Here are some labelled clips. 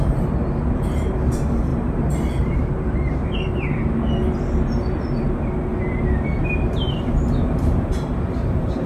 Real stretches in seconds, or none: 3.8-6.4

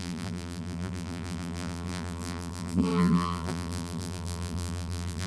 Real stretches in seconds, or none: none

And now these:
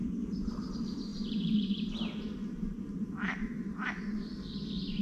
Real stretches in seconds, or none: 0.7-1.1; 3.9-5.0